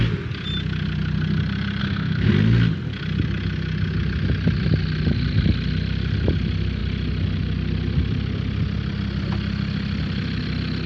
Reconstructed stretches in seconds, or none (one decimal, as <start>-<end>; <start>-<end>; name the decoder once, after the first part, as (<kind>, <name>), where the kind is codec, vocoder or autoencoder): 1.8-2.3 (codec, SNAC)